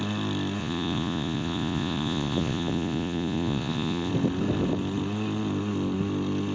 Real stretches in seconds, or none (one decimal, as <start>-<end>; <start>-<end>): 0.0-0.6; 4.1-6.5